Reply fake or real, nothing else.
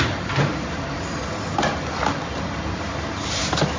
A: real